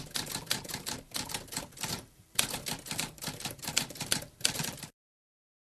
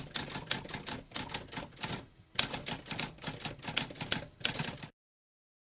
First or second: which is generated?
first